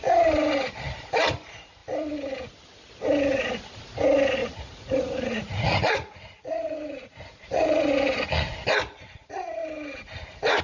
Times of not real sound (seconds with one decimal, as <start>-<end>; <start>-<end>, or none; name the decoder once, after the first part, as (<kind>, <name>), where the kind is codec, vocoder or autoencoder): 4.4-7.9 (vocoder, Vocos)